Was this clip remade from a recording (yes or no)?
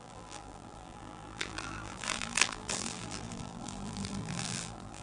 yes